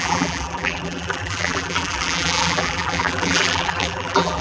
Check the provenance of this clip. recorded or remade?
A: remade